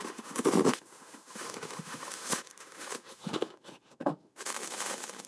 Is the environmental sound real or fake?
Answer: fake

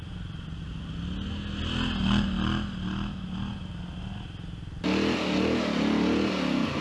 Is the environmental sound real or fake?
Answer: real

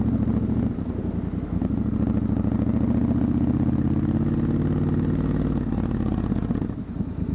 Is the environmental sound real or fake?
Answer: real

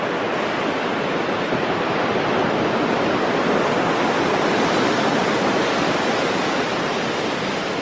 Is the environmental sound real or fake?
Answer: real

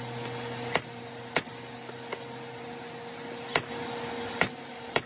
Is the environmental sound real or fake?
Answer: real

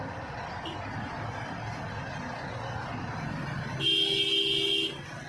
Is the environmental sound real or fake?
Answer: real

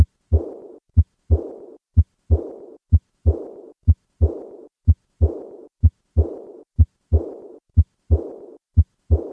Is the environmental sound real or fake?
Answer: real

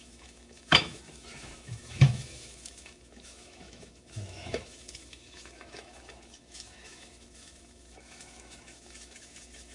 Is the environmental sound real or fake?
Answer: fake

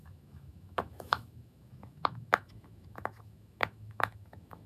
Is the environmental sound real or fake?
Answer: fake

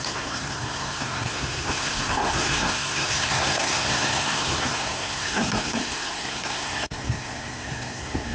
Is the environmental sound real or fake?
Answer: fake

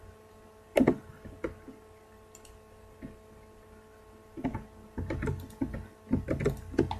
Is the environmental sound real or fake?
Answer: real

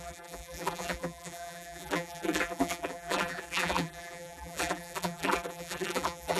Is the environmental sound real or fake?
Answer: fake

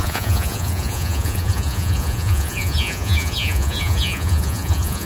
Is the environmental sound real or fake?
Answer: fake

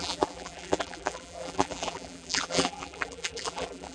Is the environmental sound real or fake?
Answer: fake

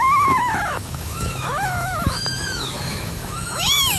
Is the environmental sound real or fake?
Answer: fake